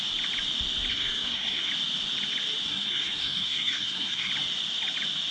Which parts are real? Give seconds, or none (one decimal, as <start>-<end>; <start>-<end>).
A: 0.0-0.9; 1.7-2.7; 4.3-5.3